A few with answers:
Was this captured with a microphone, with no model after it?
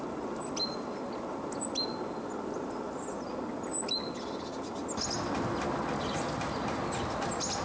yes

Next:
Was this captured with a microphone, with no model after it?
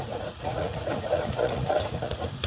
no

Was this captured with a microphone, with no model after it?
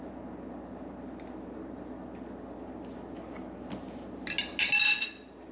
yes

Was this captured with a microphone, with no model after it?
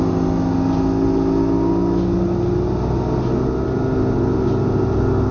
yes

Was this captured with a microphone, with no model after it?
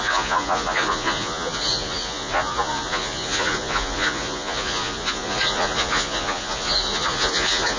no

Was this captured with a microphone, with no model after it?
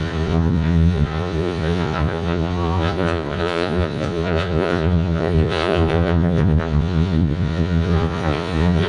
no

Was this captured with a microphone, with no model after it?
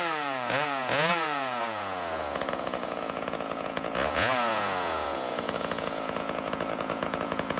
no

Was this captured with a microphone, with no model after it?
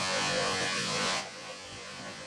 no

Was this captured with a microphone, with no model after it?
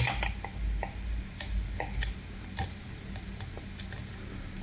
yes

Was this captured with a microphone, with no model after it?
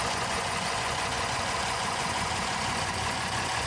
no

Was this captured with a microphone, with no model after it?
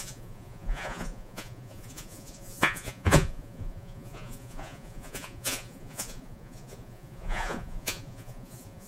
no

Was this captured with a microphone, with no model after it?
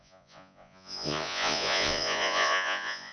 no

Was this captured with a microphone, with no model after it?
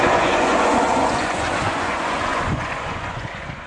no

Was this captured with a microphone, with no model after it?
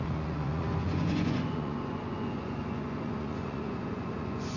no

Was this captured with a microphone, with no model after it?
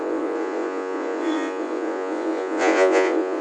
no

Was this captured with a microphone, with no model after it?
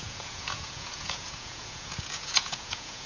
no